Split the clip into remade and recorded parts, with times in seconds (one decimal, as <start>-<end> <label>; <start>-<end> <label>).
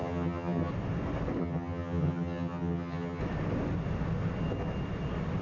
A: 0.0-0.7 remade; 0.7-1.4 recorded; 1.4-3.2 remade; 3.2-5.4 recorded